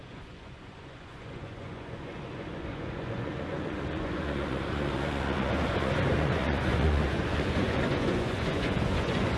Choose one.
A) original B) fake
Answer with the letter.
B